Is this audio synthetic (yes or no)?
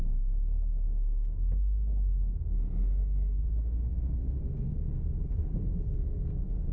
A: yes